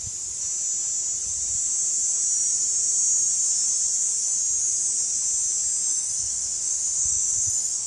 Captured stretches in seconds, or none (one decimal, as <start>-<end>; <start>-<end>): 0.0-5.9